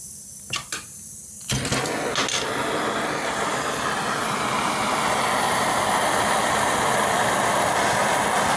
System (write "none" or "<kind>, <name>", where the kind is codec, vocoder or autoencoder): none